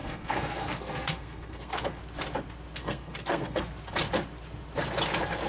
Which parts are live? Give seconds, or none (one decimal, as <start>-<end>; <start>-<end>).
2.0-2.8; 3.6-5.5